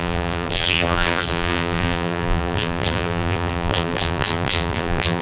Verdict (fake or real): fake